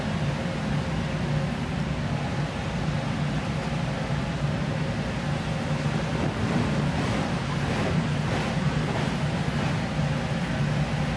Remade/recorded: recorded